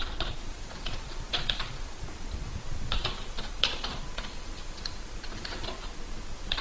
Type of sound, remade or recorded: remade